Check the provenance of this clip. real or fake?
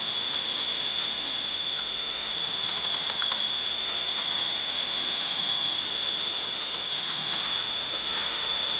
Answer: fake